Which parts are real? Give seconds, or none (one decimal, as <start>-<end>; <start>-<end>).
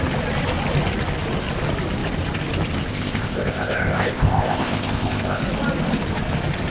0.0-2.9; 5.4-6.7